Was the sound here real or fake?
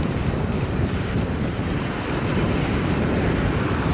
fake